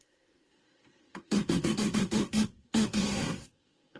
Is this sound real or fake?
fake